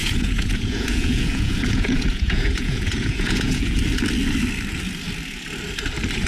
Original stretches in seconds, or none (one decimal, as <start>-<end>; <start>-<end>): 3.8-6.3